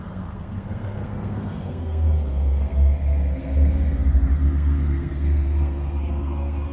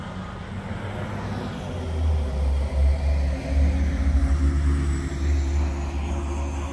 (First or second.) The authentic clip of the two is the second